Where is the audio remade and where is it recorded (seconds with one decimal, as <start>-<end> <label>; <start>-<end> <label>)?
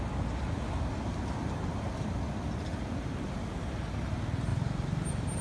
0.0-5.4 recorded